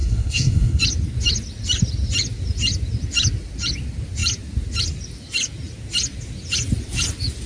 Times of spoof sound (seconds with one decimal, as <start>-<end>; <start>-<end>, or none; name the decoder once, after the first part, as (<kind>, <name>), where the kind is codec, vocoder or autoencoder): 0.0-0.8 (codec, SNAC)